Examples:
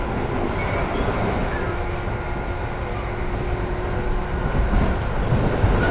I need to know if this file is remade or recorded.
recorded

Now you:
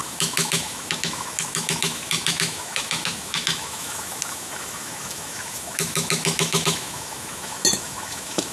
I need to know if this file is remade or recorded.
remade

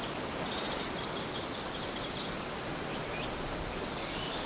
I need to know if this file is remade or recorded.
recorded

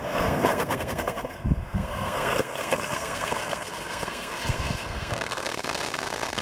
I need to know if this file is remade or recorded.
remade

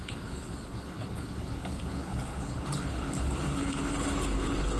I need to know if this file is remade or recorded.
remade